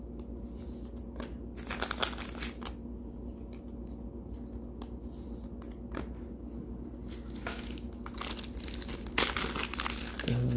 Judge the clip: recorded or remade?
recorded